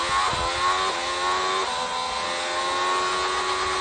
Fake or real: real